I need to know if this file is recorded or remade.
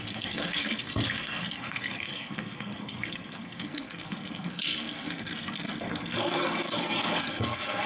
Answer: remade